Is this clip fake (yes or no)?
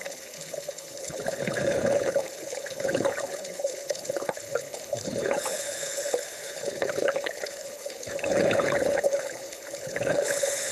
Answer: yes